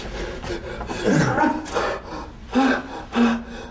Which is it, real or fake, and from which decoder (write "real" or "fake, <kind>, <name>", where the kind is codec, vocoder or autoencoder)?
real